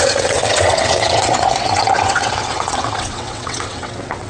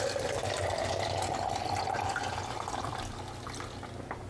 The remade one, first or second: first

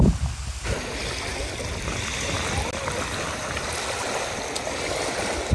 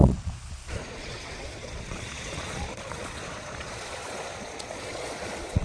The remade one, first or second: second